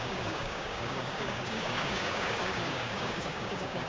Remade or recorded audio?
remade